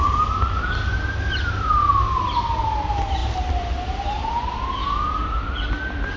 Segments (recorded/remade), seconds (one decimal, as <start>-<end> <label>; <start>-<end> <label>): 0.0-6.2 recorded